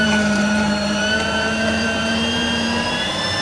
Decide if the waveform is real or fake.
fake